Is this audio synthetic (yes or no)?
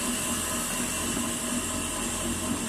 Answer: no